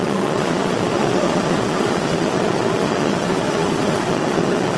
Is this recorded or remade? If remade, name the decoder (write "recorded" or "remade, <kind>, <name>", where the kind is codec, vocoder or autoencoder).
remade, vocoder, Vocos